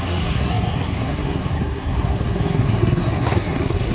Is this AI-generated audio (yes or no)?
yes